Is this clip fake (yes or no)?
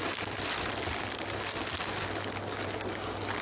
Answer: no